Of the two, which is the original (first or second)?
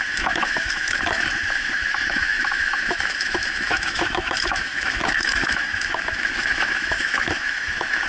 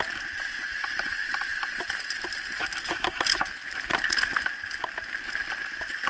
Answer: second